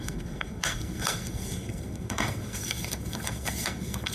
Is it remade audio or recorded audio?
remade